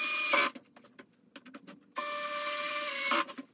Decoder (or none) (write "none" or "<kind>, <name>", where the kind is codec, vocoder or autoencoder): none